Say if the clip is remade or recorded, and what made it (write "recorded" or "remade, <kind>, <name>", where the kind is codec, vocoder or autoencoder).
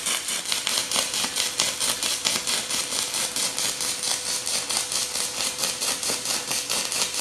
recorded